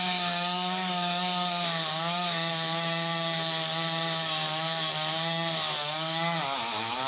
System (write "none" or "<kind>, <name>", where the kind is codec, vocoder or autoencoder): autoencoder, DAC-VAE